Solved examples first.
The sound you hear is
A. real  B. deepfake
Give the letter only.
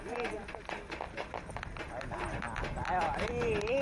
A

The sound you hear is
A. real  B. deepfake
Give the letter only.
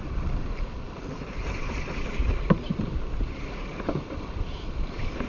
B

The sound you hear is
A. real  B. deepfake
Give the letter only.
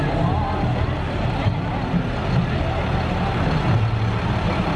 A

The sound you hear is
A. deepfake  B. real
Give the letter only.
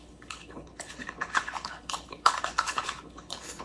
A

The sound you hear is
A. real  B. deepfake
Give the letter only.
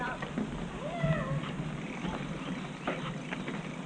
A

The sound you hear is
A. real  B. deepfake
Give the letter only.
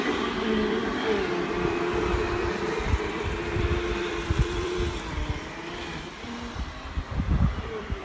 B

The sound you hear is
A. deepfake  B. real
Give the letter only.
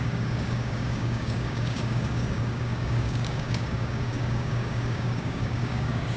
A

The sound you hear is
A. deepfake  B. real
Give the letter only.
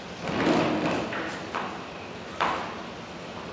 B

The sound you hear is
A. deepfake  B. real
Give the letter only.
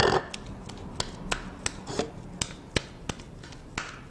B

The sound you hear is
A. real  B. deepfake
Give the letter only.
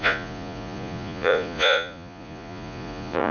B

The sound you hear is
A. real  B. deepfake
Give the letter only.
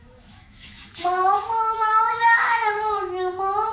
B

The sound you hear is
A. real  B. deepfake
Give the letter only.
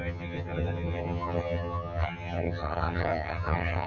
B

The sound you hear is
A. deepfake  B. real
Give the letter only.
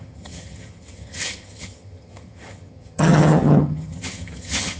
A